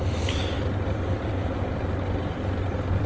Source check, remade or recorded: remade